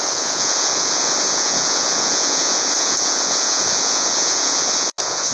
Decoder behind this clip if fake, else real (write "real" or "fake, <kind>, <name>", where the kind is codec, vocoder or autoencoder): fake, vocoder, Vocos